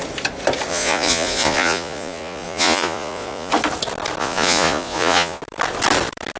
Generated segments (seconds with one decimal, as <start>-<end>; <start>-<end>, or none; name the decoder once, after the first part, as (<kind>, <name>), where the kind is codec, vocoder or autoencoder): 0.7-3.5 (vocoder, Vocos); 4.2-5.4